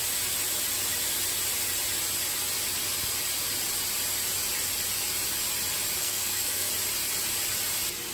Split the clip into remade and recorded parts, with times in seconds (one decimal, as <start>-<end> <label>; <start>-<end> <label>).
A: 0.0-6.0 recorded; 6.0-6.7 remade; 6.7-8.1 recorded